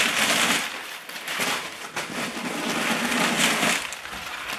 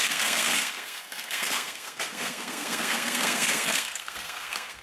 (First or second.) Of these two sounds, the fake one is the second